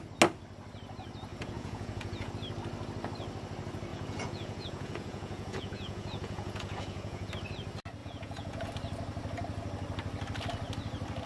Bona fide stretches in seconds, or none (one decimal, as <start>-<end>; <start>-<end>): 0.0-1.3; 2.3-3.9; 7.3-8.0; 8.7-11.3

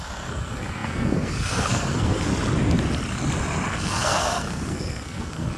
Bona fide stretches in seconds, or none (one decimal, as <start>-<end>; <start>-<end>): 2.3-3.7

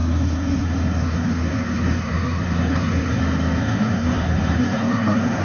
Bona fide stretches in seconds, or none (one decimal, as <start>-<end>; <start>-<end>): 3.2-3.6

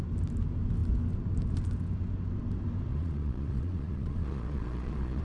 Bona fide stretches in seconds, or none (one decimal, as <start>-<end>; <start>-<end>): 0.0-2.9